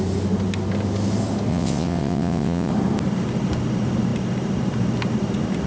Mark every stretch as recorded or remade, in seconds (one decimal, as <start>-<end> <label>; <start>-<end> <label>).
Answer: 0.0-1.5 recorded; 1.5-2.7 remade; 2.7-5.7 recorded